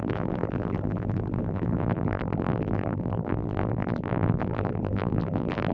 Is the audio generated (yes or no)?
yes